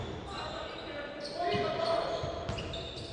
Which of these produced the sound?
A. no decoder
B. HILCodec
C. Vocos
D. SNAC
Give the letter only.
A